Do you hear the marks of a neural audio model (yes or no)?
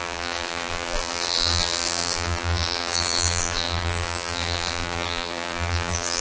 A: yes